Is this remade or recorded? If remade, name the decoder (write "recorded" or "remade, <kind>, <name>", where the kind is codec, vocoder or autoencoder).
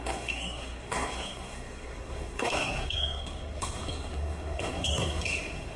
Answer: remade, codec, SNAC